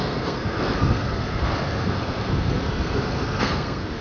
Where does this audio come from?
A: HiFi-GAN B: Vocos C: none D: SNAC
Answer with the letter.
D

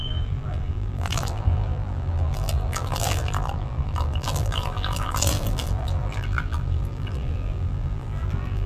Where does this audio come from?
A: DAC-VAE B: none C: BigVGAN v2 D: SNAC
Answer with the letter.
C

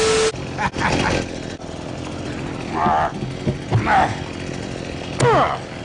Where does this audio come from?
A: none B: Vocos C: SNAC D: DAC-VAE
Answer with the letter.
A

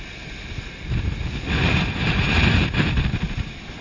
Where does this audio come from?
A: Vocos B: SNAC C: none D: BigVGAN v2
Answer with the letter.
C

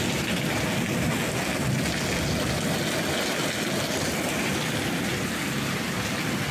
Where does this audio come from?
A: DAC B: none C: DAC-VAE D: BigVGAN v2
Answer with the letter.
B